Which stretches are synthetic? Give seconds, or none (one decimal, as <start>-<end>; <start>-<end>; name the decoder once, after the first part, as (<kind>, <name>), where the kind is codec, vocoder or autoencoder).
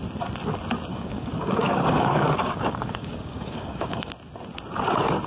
0.9-4.1 (codec, DAC)